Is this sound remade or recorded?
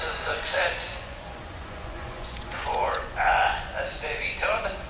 remade